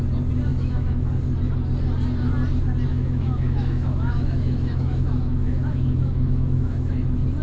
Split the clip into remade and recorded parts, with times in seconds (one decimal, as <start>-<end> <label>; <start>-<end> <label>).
0.0-0.5 recorded; 0.5-1.1 remade; 1.1-2.9 recorded; 2.9-7.0 remade; 7.0-7.4 recorded